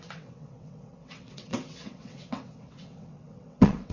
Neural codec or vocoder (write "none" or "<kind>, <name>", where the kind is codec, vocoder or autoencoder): vocoder, WaveNeXt